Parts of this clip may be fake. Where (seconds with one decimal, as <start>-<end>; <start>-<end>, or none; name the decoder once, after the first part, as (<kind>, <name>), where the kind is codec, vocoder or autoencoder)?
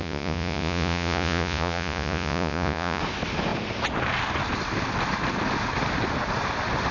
0.0-3.0 (vocoder, Vocos)